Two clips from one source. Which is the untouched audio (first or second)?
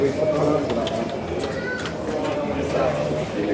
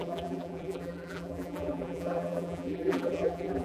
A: first